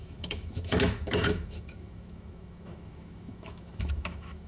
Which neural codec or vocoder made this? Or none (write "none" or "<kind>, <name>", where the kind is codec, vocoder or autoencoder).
autoencoder, DAC-VAE